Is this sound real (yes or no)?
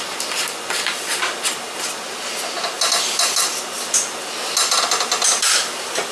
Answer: yes